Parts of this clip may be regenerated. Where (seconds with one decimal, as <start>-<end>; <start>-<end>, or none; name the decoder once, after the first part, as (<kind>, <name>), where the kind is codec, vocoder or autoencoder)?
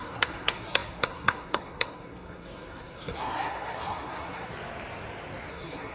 0.0-4.5 (codec, SNAC); 5.5-5.9